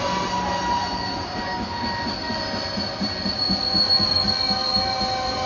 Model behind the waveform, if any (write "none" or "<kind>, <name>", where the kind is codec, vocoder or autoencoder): none